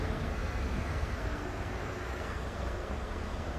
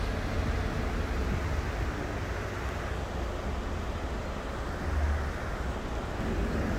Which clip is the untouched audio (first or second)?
second